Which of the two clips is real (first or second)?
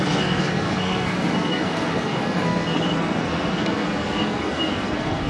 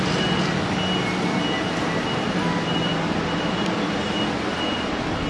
second